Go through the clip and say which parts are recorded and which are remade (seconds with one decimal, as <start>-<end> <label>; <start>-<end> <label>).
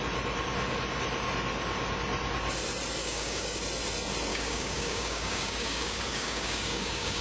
0.0-3.0 recorded; 3.0-3.6 remade; 3.6-4.3 recorded; 4.3-7.2 remade